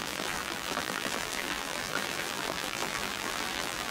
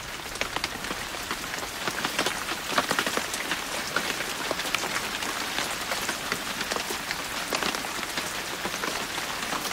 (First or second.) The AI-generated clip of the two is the first